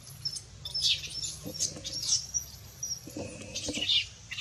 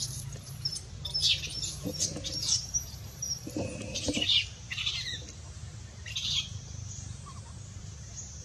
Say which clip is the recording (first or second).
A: first